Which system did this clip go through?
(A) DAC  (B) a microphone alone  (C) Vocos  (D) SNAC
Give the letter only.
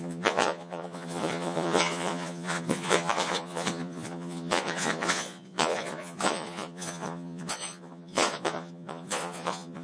C